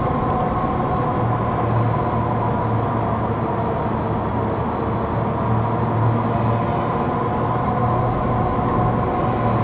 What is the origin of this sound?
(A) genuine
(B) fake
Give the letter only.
A